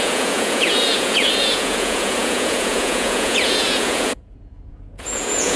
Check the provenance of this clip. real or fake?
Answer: fake